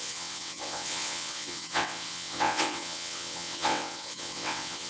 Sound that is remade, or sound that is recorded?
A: remade